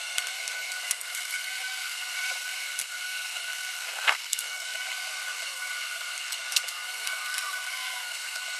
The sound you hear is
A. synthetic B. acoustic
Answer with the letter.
A